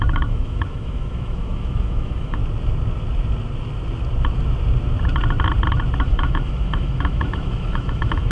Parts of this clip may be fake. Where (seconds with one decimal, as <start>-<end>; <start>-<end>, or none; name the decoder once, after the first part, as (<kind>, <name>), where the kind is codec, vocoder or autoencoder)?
0.0-2.4 (autoencoder, DAC-VAE); 6.0-8.3